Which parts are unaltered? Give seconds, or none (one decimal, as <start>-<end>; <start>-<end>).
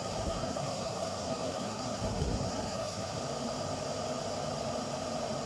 3.2-5.5